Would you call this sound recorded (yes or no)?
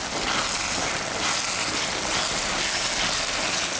yes